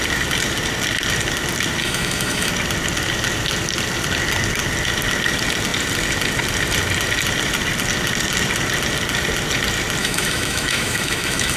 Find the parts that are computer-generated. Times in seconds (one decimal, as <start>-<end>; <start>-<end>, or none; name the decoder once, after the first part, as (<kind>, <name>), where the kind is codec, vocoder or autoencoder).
1.8-2.5 (autoencoder, DAC-VAE); 10.0-11.6